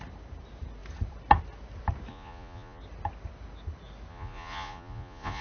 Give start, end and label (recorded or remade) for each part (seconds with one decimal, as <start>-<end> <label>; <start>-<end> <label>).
0.0-2.1 recorded; 2.1-2.8 remade; 2.8-4.1 recorded; 4.1-5.4 remade